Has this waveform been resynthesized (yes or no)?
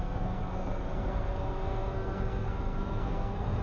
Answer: yes